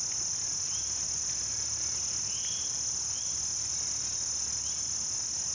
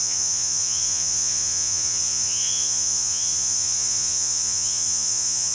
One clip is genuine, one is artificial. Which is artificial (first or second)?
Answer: second